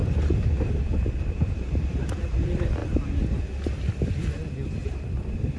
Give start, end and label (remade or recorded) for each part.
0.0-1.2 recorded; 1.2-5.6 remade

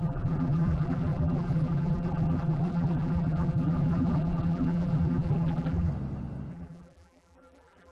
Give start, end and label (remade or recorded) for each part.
0.0-5.9 remade; 5.9-6.5 recorded; 6.5-7.9 remade

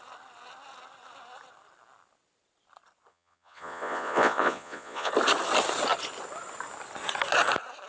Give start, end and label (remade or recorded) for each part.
0.0-3.1 recorded; 3.1-5.1 remade; 5.1-7.9 recorded

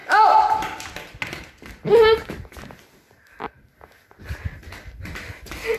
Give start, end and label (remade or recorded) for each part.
0.0-5.8 recorded

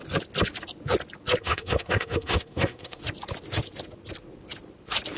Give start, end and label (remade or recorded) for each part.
0.0-1.4 recorded; 1.4-3.0 remade; 3.0-5.2 recorded

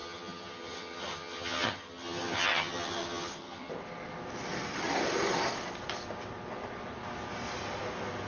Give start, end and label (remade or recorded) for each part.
0.0-3.7 remade; 3.7-8.3 recorded